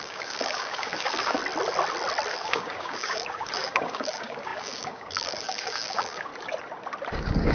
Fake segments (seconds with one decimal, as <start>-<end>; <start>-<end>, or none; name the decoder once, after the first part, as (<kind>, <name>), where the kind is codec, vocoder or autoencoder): 0.0-1.4 (codec, DAC); 2.3-6.3; 7.1-7.5